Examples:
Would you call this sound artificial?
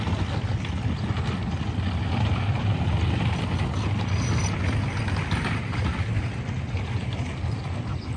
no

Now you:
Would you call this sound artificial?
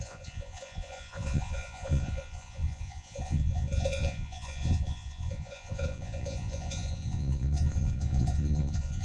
yes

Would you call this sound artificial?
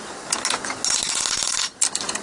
no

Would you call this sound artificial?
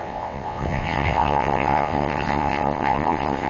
yes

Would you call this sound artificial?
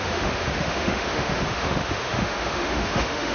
yes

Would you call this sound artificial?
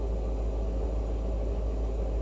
no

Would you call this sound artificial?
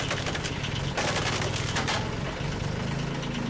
no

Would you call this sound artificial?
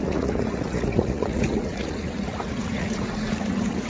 yes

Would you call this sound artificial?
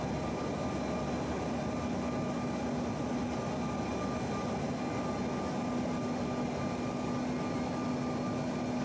no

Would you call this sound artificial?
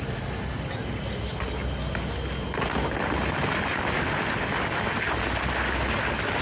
no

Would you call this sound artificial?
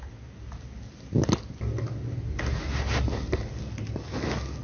no